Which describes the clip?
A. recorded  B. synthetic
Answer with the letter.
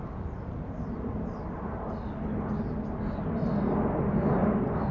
A